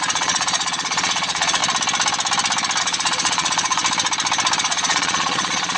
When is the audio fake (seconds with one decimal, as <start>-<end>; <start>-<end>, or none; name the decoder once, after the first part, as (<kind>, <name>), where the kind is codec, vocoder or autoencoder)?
0.0-1.6 (vocoder, Vocos); 2.8-3.8; 4.6-5.8